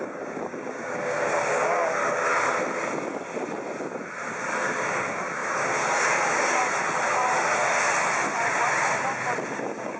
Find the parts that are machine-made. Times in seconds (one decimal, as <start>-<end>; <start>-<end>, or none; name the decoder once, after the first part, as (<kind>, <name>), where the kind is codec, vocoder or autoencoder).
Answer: 0.0-2.0 (codec, DAC); 4.5-6.6; 9.5-10.0